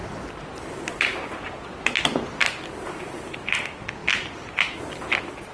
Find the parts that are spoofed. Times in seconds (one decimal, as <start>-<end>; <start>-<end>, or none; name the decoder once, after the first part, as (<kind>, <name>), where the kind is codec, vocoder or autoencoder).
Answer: none